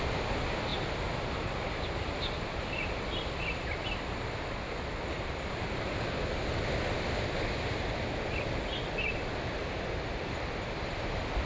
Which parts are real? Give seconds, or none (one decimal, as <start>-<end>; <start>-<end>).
0.0-11.5